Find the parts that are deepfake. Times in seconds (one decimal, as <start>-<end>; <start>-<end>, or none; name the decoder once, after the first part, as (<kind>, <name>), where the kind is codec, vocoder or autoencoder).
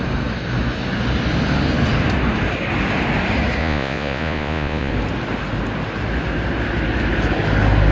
3.6-4.9 (vocoder, Vocos)